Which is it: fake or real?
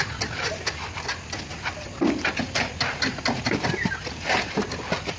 real